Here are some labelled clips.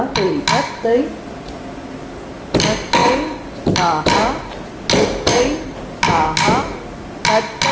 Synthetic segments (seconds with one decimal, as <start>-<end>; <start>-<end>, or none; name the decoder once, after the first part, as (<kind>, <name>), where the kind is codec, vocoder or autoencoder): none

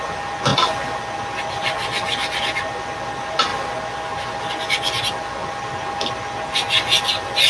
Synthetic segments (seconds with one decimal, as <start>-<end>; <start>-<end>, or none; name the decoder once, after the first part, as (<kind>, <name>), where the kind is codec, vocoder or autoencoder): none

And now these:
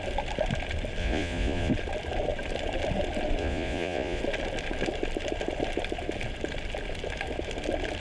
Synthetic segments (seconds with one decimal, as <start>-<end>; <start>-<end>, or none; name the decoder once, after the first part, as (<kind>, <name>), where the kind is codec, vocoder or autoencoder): 1.0-1.7 (vocoder, Vocos); 3.4-4.2

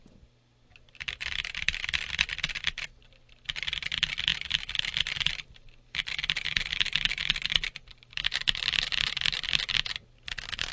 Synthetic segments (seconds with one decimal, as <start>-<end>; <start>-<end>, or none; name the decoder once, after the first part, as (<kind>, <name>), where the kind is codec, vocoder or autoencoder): none

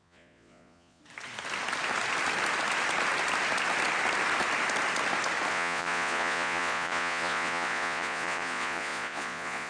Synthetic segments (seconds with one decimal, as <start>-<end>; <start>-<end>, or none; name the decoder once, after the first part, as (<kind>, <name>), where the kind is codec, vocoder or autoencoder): 0.0-1.0 (vocoder, Vocos); 5.5-9.7

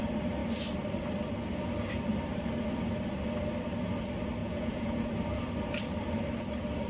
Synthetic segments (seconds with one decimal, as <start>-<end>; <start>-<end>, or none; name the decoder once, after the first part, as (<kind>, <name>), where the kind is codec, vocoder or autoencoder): 4.4-5.1 (vocoder, Vocos)